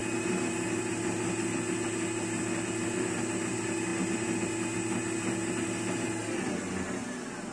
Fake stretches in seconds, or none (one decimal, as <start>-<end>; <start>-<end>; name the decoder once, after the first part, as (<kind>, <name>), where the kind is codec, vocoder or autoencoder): none